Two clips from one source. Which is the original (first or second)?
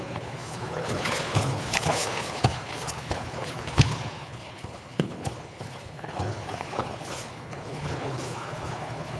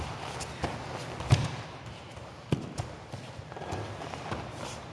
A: second